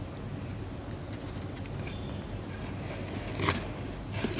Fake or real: real